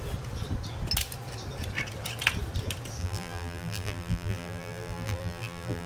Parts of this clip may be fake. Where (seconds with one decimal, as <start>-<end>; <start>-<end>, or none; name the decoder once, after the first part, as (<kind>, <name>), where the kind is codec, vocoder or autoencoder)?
3.0-5.9 (vocoder, BigVGAN v2)